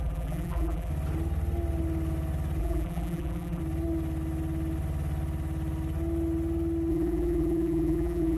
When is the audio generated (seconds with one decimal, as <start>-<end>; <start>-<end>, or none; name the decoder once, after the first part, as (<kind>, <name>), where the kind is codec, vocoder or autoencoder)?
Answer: 0.0-0.9 (vocoder, BigVGAN v2); 2.6-3.6; 6.9-8.4